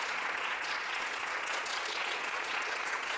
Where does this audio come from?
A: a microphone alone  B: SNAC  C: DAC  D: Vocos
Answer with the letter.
D